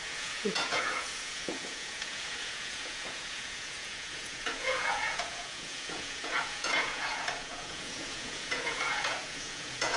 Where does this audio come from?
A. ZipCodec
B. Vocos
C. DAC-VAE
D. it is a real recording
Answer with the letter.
B